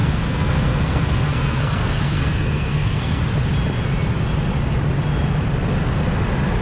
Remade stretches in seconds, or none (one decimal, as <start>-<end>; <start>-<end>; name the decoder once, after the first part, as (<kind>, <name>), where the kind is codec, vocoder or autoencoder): 0.0-3.2 (codec, SNAC)